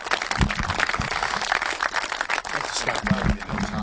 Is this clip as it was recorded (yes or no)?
yes